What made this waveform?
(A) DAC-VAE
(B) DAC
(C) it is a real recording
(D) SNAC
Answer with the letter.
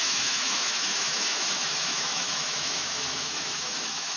A